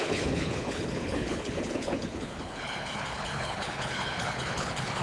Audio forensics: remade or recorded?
remade